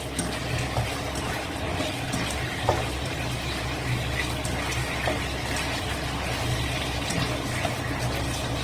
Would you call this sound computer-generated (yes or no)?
no